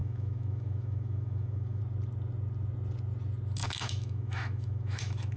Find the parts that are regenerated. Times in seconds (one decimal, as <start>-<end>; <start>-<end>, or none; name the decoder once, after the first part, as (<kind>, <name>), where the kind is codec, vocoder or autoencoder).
0.0-1.8 (autoencoder, DAC-VAE); 3.6-5.4